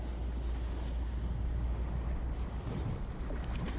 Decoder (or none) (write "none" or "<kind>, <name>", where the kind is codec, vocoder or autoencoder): none